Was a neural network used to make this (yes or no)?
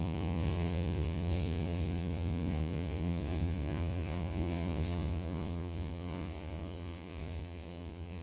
yes